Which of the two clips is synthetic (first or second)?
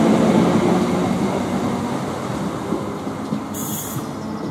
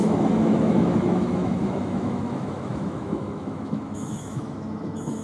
second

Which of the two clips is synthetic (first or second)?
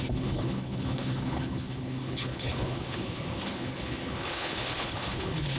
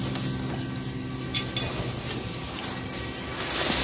first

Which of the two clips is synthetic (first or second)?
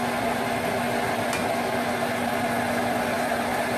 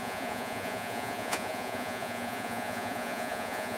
second